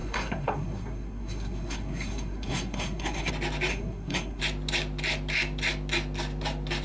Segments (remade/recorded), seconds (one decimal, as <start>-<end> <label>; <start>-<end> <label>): 0.0-3.3 remade; 3.3-3.7 recorded; 3.7-4.4 remade; 4.4-6.8 recorded